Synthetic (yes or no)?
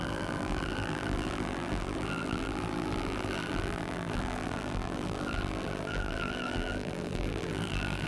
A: yes